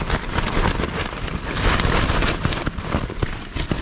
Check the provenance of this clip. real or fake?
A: real